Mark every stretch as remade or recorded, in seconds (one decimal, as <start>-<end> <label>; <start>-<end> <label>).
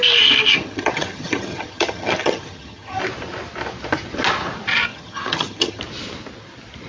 0.0-0.5 recorded; 0.5-3.0 remade; 3.0-4.9 recorded; 4.9-5.8 remade; 5.8-6.9 recorded